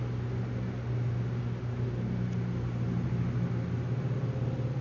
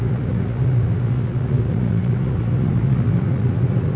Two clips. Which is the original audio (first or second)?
first